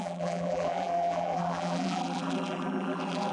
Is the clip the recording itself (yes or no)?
no